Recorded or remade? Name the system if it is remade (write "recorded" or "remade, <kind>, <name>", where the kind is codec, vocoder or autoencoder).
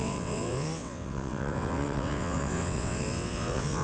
remade, vocoder, WaveNeXt